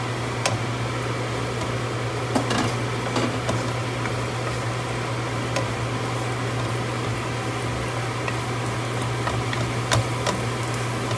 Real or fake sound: real